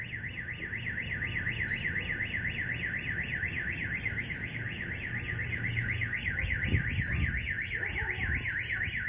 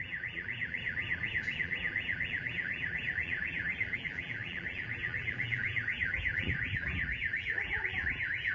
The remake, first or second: second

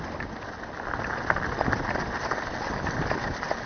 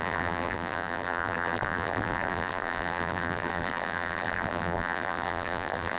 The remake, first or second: second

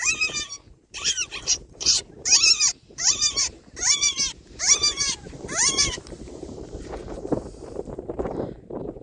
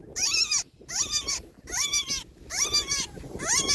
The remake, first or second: first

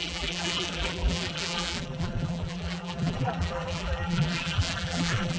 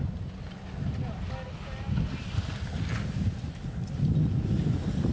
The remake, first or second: first